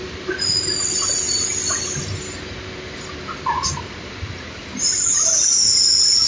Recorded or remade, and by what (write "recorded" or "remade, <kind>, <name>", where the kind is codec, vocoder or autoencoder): recorded